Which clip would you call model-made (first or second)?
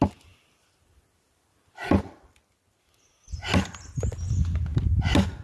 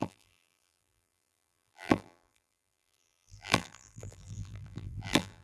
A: second